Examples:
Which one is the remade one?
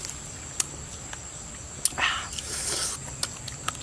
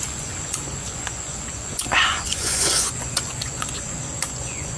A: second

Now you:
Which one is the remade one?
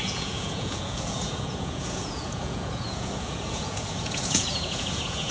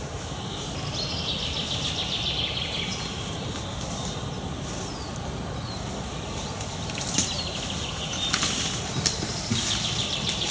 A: first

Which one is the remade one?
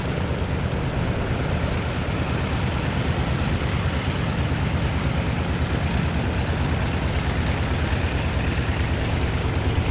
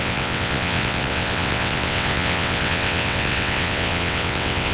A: second